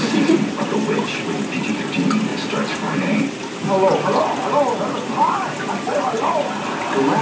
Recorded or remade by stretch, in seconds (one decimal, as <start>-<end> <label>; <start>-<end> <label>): 0.0-7.2 recorded